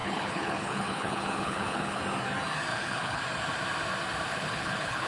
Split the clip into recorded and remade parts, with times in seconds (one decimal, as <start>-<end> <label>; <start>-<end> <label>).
0.0-2.0 remade; 2.0-2.7 recorded; 2.7-3.2 remade; 3.2-4.3 recorded; 4.3-5.1 remade